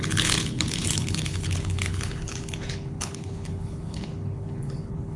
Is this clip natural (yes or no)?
no